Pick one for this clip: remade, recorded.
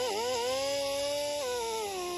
recorded